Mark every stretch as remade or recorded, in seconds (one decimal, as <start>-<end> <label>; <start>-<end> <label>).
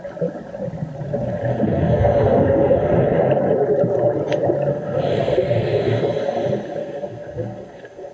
0.0-1.5 recorded; 1.5-3.3 remade; 3.3-4.7 recorded; 4.7-6.0 remade; 6.0-6.8 recorded; 6.8-8.1 remade